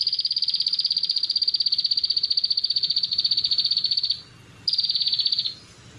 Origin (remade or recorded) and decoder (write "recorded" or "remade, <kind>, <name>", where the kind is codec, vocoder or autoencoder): recorded